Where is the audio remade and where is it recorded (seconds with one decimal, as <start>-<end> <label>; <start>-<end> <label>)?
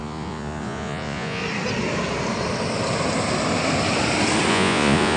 0.0-1.4 remade; 1.4-4.5 recorded; 4.5-5.2 remade